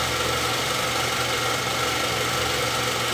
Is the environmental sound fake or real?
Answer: real